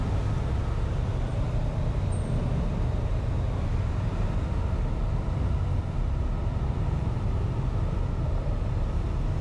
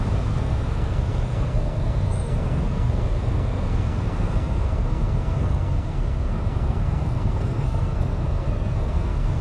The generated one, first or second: second